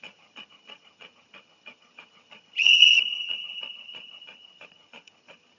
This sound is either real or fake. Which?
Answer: fake